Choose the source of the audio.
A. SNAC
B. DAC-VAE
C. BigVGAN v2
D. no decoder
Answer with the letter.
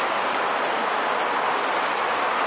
D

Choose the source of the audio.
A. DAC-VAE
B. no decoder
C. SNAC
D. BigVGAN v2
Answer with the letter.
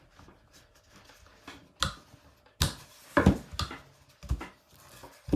B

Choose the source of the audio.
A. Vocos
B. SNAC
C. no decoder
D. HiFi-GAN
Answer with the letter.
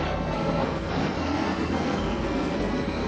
B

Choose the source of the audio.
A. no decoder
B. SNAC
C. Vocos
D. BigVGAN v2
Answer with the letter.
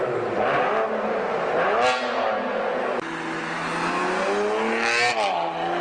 A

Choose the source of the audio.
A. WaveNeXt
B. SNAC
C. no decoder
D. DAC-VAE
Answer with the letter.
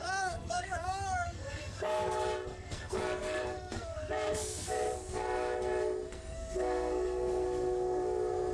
B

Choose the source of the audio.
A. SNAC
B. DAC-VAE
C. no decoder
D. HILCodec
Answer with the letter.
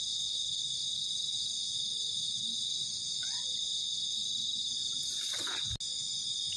C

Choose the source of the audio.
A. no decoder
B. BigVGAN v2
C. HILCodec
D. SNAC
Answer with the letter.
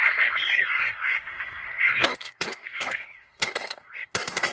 D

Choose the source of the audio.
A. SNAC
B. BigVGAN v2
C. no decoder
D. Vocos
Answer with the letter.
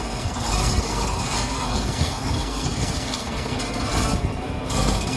A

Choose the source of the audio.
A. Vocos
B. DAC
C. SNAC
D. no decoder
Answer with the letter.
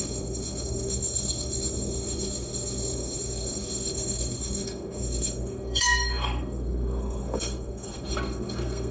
C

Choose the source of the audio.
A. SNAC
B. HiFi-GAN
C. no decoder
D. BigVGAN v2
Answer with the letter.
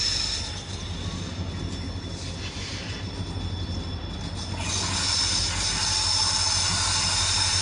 C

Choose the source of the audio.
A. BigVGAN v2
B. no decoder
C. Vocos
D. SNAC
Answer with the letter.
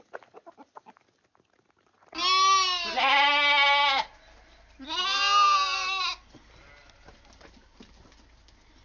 B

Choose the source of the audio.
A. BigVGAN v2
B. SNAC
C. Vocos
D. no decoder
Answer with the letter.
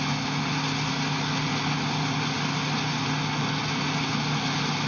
D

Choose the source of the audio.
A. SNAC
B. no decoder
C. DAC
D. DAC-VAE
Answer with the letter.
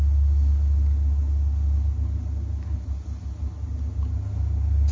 B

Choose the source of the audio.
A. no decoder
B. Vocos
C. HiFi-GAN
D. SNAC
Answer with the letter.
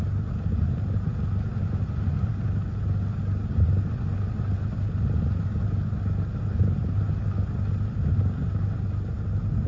A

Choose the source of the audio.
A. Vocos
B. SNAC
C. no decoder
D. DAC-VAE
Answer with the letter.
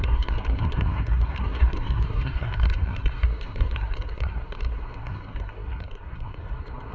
B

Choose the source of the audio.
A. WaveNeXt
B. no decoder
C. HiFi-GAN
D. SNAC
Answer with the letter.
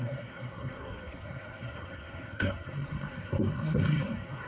D